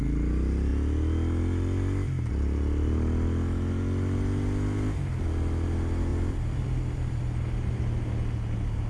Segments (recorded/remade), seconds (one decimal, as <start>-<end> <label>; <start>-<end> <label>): 0.0-6.1 recorded; 6.1-7.2 remade; 7.2-8.9 recorded

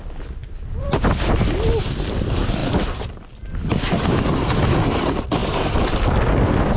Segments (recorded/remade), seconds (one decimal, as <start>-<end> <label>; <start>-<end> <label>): 0.0-0.4 recorded; 0.4-1.7 remade; 1.7-2.6 recorded; 2.6-3.3 remade; 3.3-6.8 recorded

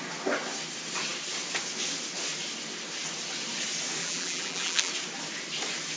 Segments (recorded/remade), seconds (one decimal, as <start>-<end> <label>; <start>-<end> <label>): 0.0-4.0 recorded; 4.0-4.9 remade; 4.9-6.0 recorded

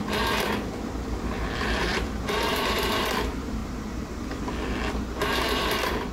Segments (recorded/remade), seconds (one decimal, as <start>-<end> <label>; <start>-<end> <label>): 0.0-3.6 remade; 3.6-5.1 recorded; 5.1-6.1 remade

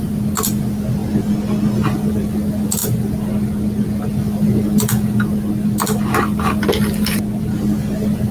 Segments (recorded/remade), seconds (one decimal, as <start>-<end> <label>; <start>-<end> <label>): 0.0-8.3 recorded